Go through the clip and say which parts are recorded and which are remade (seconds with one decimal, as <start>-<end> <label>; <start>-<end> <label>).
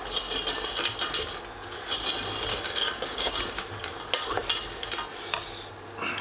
0.0-2.5 recorded; 2.5-3.3 remade; 3.3-6.2 recorded